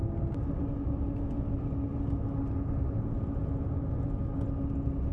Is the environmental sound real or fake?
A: real